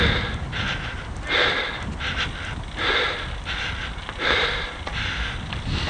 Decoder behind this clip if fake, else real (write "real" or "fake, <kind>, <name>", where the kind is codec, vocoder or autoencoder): real